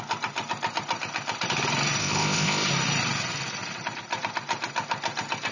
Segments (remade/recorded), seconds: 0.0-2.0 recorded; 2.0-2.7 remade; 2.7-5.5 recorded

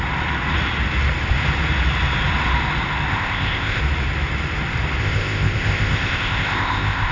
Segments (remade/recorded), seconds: 0.0-3.1 recorded; 3.1-3.8 remade; 3.8-5.0 recorded; 5.0-7.1 remade

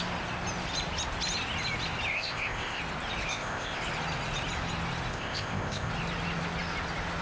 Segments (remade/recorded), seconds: 0.0-2.1 recorded; 2.1-2.8 remade; 2.8-3.3 recorded; 3.3-3.8 remade; 3.8-5.1 recorded; 5.1-5.9 remade; 5.9-7.2 recorded

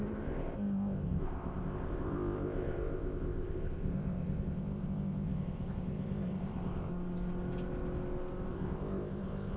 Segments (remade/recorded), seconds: 0.0-6.9 remade; 6.9-8.5 recorded; 8.5-9.6 remade